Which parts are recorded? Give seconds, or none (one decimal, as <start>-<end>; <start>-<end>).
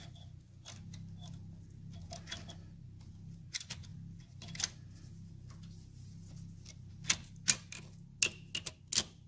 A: 0.0-9.3